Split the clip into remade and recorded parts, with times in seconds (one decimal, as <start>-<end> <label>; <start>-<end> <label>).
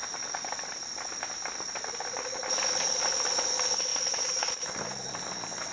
0.0-3.9 recorded; 3.9-4.5 remade; 4.5-5.7 recorded